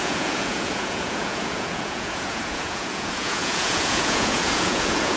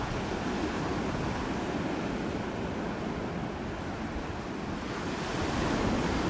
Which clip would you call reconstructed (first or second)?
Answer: first